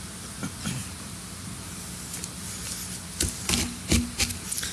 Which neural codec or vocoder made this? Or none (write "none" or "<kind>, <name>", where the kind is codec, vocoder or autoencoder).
none